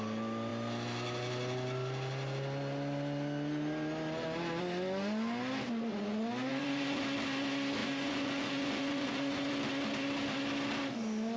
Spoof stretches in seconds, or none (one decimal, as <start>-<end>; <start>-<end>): 6.5-7.0; 7.8-9.5